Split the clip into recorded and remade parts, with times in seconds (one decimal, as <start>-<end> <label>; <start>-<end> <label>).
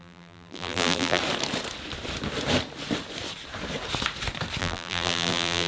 0.0-1.2 remade; 1.2-4.6 recorded; 4.6-5.7 remade